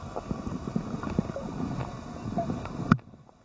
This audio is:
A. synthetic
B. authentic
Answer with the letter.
B